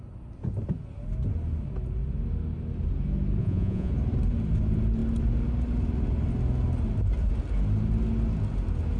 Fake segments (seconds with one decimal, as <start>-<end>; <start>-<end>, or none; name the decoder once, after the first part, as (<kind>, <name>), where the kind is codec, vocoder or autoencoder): 3.4-3.9 (vocoder, Vocos)